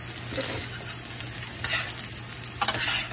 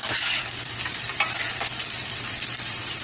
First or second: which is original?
first